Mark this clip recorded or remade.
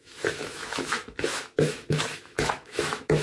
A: remade